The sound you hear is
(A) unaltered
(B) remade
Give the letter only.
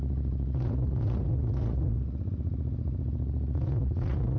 B